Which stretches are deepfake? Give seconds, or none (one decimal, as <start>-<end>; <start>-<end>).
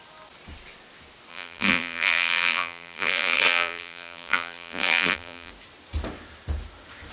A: 1.3-5.5